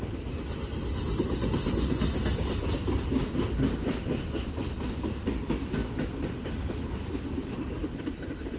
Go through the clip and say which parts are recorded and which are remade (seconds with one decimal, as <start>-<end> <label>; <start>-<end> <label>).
0.0-8.6 recorded